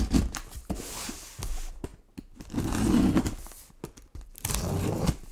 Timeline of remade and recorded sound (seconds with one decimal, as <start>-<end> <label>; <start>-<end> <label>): 0.0-5.3 recorded

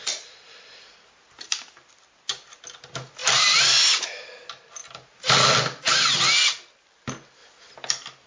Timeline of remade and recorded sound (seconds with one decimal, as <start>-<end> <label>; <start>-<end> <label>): 0.0-8.3 recorded

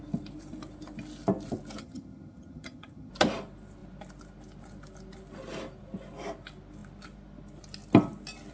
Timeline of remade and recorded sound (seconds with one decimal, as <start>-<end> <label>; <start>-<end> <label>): 0.0-1.8 recorded; 1.8-3.1 remade; 3.1-8.5 recorded

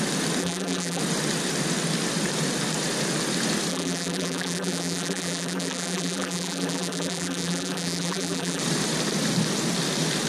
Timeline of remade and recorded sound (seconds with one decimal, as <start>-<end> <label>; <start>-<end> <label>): 0.0-0.4 recorded; 0.4-1.0 remade; 1.0-3.7 recorded; 3.7-8.6 remade; 8.6-10.3 recorded

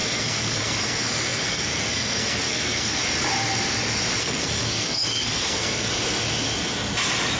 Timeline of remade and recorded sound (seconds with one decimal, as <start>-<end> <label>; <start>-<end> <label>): 0.0-3.0 remade; 3.0-4.2 recorded; 4.2-5.9 remade; 5.9-7.4 recorded

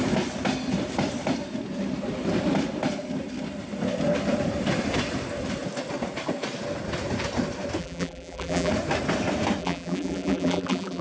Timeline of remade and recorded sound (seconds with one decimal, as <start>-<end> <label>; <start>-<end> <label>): 0.0-7.8 recorded; 7.8-8.7 remade; 8.7-9.6 recorded; 9.6-11.0 remade

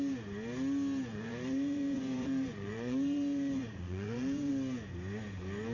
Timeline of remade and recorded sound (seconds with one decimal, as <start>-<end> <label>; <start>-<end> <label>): 0.0-1.1 recorded; 1.1-4.5 remade; 4.5-5.7 recorded

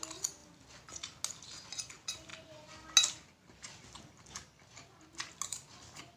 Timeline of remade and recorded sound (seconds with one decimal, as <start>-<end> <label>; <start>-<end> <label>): 0.0-6.2 recorded